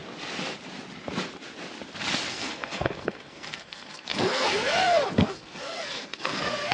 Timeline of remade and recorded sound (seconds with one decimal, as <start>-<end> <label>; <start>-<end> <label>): 0.0-2.3 recorded; 2.3-6.7 remade